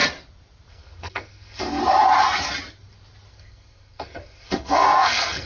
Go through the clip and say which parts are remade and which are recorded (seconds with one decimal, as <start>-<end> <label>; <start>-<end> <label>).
0.0-0.7 recorded; 0.7-1.8 remade; 1.8-3.3 recorded; 3.3-5.5 remade